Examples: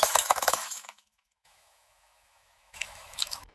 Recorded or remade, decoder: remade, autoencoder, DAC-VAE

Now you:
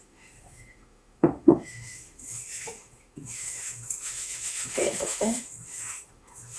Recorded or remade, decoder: remade, autoencoder, DAC-VAE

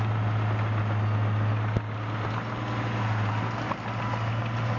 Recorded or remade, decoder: recorded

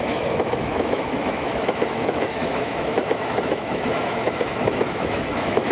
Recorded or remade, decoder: remade, autoencoder, DAC-VAE